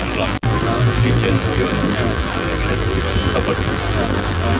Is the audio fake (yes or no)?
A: yes